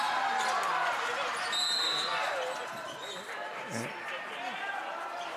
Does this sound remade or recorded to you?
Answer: recorded